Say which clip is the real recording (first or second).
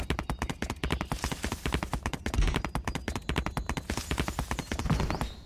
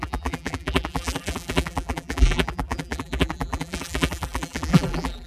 first